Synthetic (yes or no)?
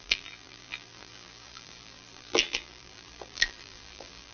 yes